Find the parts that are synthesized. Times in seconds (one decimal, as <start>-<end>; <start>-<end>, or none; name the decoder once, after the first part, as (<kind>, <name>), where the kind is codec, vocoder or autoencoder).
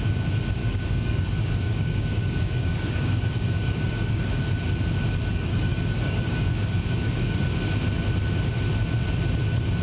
0.6-4.4 (codec, DAC); 5.3-7.4